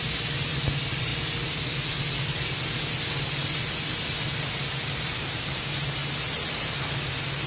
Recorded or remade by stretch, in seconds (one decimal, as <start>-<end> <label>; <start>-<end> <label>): 0.0-7.5 recorded

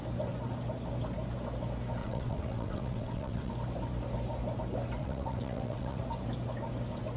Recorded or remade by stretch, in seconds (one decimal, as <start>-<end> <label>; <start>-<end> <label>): 0.0-2.0 recorded; 2.0-3.5 remade; 3.5-5.0 recorded; 5.0-6.0 remade; 6.0-7.2 recorded

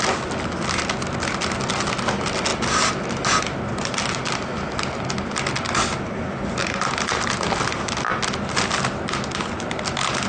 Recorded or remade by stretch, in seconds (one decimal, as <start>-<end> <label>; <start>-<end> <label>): 0.0-10.3 recorded

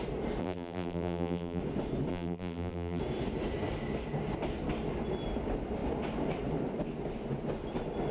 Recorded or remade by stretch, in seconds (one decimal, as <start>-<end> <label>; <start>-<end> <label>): 0.0-0.4 recorded; 0.4-1.6 remade; 1.6-2.1 recorded; 2.1-3.0 remade; 3.0-8.1 recorded

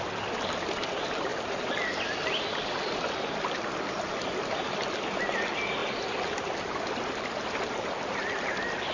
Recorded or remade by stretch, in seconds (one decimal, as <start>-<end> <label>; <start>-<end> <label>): 0.0-8.9 recorded

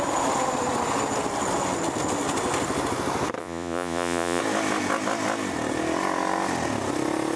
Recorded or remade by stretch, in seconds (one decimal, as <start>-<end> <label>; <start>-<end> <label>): 0.0-3.4 recorded; 3.4-4.4 remade; 4.4-7.4 recorded